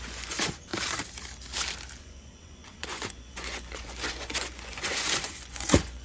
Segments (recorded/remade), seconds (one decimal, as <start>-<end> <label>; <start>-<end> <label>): 0.0-0.7 remade; 0.7-2.0 recorded; 2.0-6.0 remade